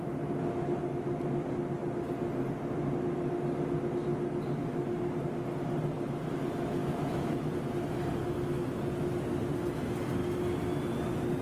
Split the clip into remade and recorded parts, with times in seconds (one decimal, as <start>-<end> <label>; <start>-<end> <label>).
0.0-6.8 recorded; 6.8-7.3 remade; 7.3-8.2 recorded; 8.2-8.8 remade; 8.8-11.4 recorded